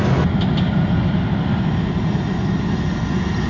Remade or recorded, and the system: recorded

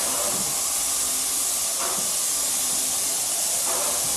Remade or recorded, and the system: recorded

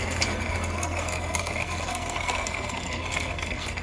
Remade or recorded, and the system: remade, codec, SNAC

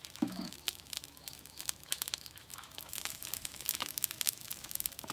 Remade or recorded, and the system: remade, autoencoder, DAC-VAE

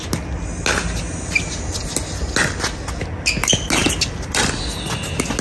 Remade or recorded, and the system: recorded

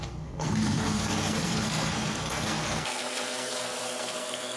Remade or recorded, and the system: remade, codec, SNAC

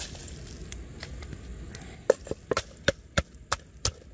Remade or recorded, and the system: recorded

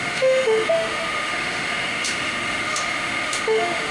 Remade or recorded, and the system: remade, autoencoder, DAC-VAE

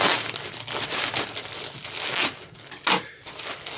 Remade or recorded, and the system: recorded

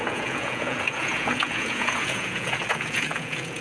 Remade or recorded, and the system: remade, vocoder, Vocos